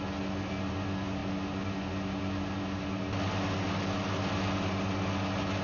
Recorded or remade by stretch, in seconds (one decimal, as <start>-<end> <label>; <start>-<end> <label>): 0.0-5.6 recorded